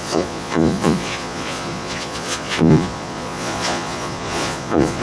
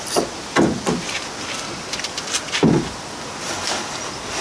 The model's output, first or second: first